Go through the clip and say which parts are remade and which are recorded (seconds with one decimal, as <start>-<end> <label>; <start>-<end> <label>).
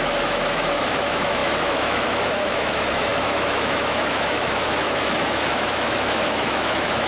0.0-7.1 remade